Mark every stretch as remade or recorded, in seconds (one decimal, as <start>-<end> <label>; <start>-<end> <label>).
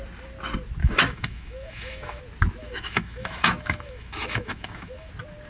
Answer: 0.0-0.8 recorded; 0.8-2.2 remade; 2.2-2.6 recorded; 2.6-5.1 remade; 5.1-5.5 recorded